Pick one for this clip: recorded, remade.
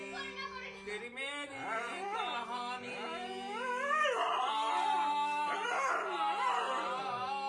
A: recorded